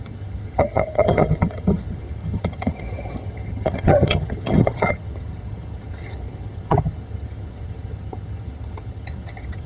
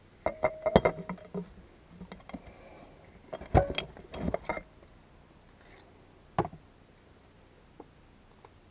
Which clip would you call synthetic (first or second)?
first